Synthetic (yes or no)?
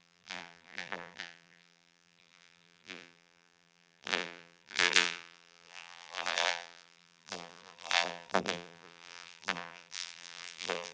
yes